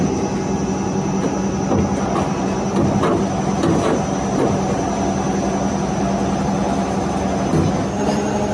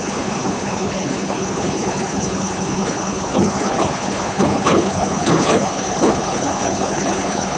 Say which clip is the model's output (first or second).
second